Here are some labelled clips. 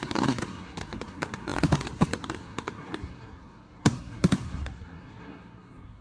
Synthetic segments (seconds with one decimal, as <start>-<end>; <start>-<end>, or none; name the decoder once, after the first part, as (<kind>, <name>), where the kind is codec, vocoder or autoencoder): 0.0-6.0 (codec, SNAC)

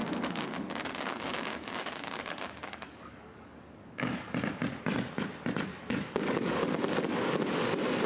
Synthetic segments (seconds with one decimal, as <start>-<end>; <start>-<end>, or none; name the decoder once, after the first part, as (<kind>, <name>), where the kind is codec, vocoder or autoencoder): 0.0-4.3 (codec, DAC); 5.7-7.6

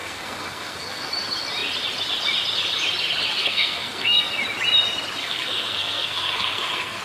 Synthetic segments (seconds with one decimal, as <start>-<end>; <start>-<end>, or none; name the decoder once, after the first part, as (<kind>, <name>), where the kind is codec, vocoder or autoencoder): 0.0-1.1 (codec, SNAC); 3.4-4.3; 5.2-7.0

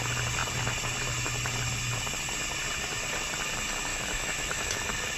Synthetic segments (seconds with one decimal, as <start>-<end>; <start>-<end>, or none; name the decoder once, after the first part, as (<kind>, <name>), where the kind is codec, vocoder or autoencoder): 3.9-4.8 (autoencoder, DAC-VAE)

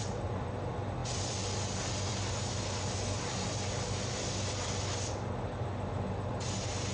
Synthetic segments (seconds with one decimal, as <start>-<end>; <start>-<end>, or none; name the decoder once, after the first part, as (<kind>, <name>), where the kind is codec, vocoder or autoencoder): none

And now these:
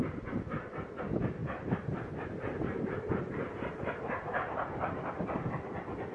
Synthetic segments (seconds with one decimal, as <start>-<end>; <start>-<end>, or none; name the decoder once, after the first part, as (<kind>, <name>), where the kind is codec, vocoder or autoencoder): 1.4-5.1 (vocoder, BigVGAN v2)